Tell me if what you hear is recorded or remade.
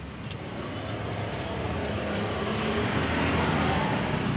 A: recorded